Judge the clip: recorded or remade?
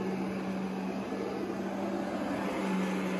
recorded